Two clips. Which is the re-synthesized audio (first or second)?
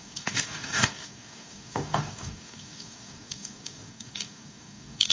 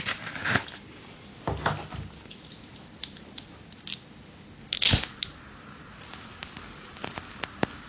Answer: first